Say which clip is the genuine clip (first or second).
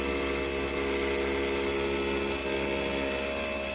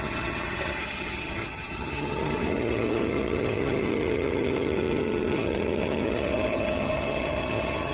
first